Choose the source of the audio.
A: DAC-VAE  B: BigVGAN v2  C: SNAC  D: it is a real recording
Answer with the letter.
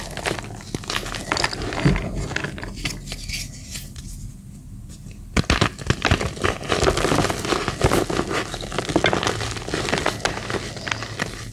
D